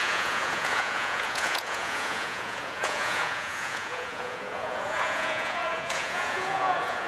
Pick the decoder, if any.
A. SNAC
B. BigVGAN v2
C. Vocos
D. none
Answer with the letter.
C